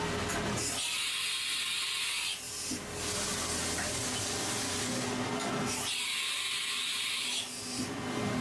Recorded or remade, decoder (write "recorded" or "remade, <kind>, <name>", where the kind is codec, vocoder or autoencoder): recorded